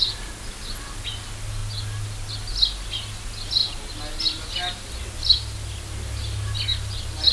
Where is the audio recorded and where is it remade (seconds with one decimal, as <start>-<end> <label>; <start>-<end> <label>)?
0.0-7.3 recorded